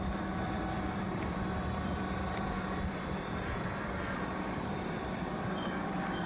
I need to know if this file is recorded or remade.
remade